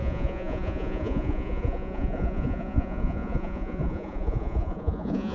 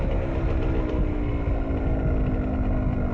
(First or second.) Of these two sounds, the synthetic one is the first